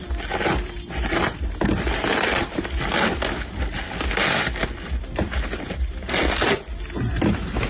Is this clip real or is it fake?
real